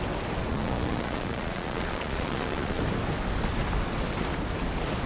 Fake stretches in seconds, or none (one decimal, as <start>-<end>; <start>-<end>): 0.5-2.8